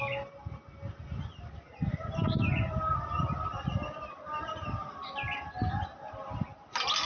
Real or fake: real